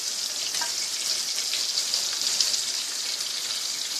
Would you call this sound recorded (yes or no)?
yes